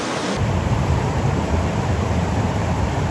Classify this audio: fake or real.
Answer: real